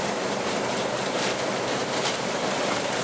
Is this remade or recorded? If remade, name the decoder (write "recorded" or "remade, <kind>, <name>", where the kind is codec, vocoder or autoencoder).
remade, vocoder, BigVGAN v2